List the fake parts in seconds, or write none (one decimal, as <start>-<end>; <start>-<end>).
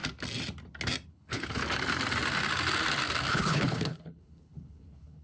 1.1-1.6; 3.3-5.2